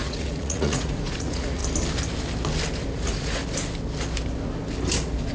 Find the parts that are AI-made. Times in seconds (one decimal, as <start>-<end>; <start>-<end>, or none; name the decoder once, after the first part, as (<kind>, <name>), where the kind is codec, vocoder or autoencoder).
0.0-1.6 (vocoder, Vocos); 2.9-3.4